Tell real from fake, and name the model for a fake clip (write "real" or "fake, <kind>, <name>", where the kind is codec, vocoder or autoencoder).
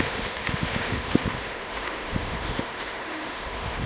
fake, autoencoder, DAC-VAE